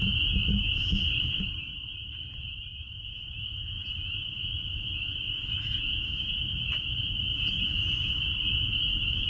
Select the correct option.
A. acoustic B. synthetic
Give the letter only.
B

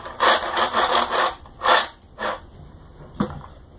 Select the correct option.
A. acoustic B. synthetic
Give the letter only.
B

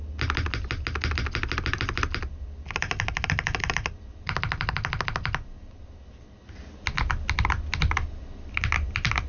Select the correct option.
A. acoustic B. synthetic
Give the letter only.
A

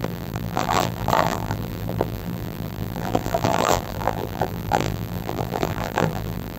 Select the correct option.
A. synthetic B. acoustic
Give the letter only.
A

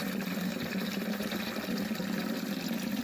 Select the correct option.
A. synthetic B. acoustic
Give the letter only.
A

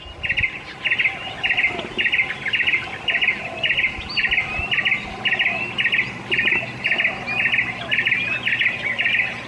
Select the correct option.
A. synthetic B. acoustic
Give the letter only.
B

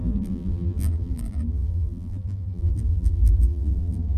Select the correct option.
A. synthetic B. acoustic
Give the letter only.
A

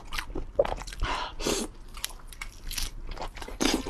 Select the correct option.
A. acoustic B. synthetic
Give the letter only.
A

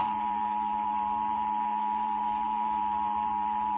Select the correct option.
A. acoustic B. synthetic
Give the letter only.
B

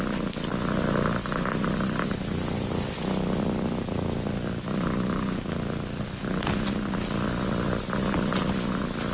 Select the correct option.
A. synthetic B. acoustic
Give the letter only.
B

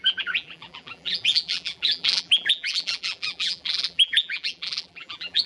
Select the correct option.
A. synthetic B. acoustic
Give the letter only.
A